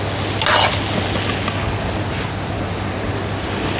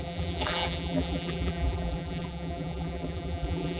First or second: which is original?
first